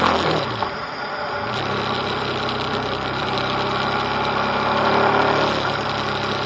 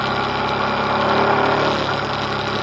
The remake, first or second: first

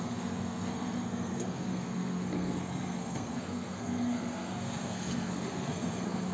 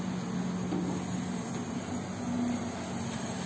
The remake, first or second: first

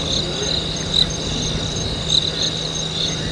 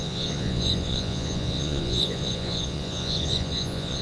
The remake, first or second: second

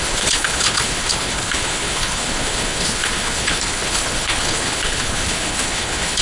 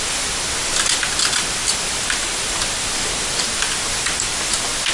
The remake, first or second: first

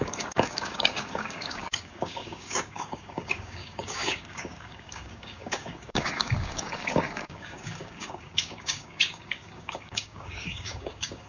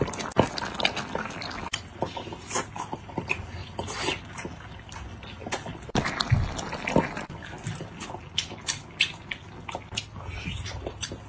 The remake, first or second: first